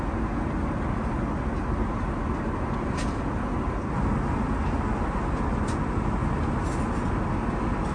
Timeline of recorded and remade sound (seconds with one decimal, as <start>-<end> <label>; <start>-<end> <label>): 0.0-7.9 recorded